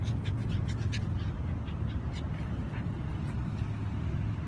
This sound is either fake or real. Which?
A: real